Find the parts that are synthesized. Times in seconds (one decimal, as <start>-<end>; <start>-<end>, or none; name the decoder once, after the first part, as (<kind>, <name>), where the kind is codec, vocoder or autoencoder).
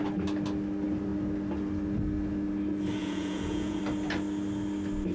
3.0-3.8 (vocoder, Vocos)